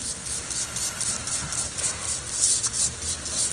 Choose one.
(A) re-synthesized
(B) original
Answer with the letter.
B